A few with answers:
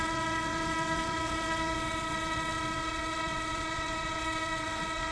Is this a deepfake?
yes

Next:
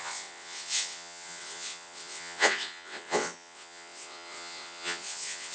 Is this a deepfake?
yes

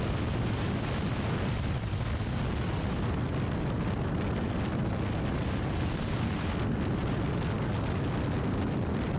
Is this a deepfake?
no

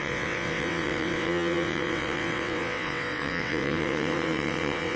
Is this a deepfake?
yes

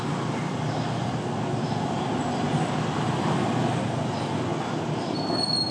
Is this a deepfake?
no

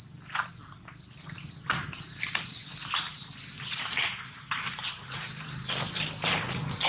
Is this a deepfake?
no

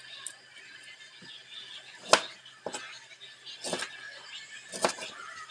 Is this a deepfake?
no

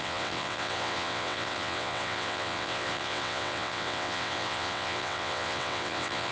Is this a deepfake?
yes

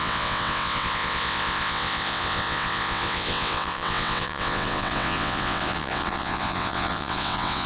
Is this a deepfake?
yes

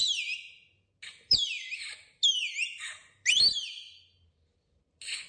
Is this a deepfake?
no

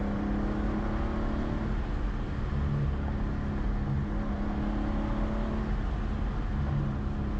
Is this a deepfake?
no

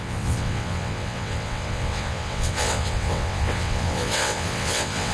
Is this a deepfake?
yes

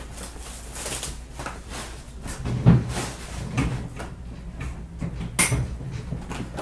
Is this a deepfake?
no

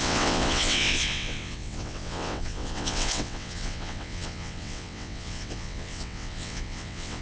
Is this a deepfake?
yes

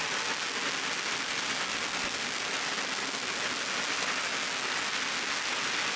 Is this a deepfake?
no